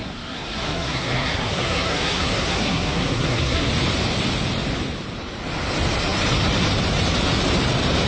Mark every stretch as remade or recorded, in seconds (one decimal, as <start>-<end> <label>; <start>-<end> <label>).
0.0-3.7 remade; 3.7-8.1 recorded